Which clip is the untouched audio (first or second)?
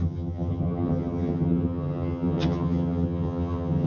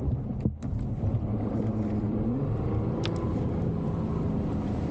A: second